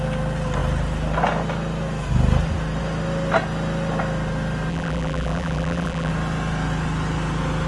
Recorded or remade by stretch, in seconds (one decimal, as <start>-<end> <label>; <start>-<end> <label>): 0.0-4.7 recorded; 4.7-6.1 remade; 6.1-7.7 recorded